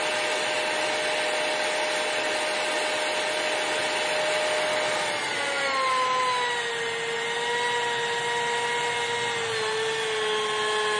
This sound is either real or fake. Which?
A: real